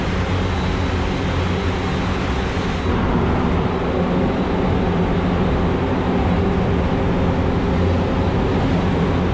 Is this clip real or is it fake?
real